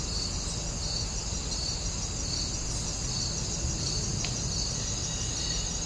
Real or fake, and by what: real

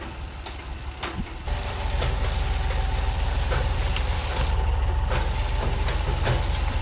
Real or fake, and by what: real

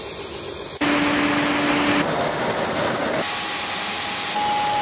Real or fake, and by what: real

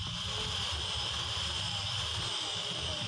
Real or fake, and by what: real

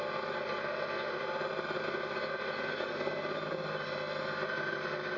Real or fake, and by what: real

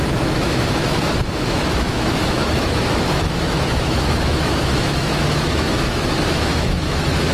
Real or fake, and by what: fake, autoencoder, DAC-VAE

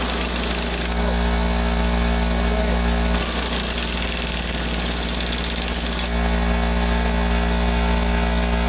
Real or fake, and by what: real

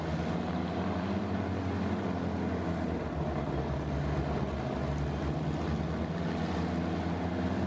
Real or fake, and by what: real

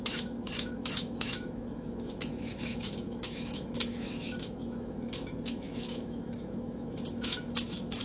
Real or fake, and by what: fake, autoencoder, DAC-VAE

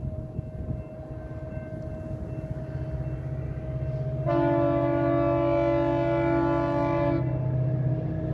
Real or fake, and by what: real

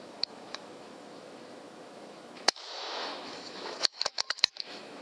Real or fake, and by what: fake, autoencoder, DAC-VAE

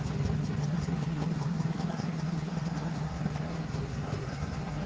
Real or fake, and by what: fake, codec, SNAC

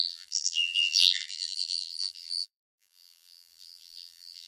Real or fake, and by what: fake, vocoder, BigVGAN v2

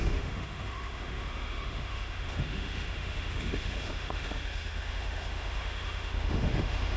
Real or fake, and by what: fake, autoencoder, DAC-VAE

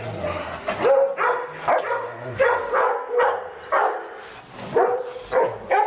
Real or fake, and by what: real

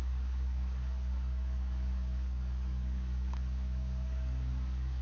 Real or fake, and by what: fake, codec, DAC